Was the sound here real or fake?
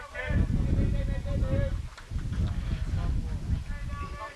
real